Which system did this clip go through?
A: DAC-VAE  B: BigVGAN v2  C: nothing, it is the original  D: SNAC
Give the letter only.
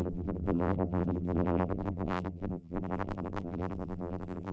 B